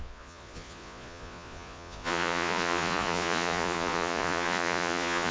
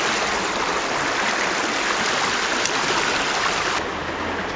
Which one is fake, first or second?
first